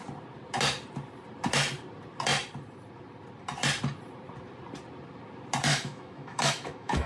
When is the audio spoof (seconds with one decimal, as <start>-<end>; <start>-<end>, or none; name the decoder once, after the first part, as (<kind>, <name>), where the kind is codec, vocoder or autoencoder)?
5.7-7.1 (autoencoder, DAC-VAE)